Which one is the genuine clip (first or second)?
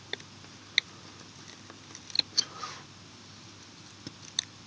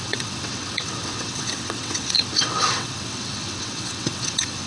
first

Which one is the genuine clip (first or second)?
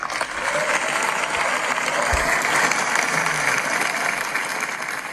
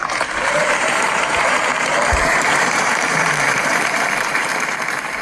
first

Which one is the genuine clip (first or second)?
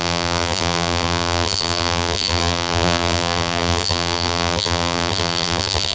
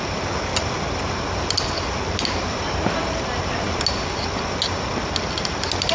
second